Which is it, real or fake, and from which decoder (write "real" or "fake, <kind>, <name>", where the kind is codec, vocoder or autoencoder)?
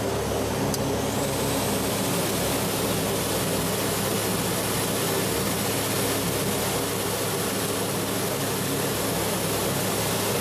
real